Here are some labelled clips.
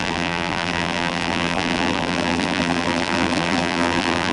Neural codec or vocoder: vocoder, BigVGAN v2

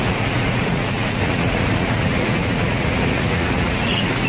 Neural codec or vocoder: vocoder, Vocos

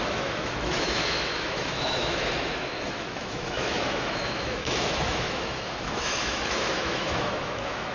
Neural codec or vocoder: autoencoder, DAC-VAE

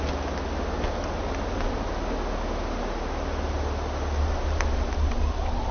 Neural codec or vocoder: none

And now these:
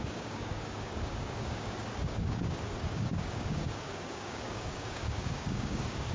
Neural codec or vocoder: codec, DAC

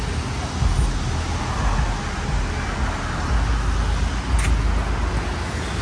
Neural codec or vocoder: none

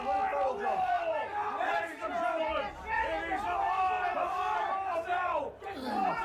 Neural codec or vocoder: none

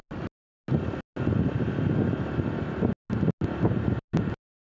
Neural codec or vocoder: none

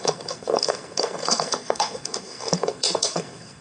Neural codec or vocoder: codec, SNAC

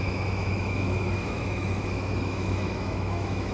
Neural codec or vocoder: autoencoder, DAC-VAE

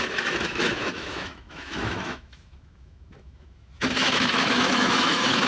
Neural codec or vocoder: autoencoder, DAC-VAE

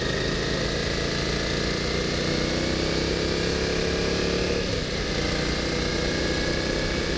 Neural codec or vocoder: none